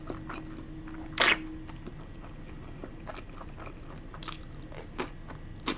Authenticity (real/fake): real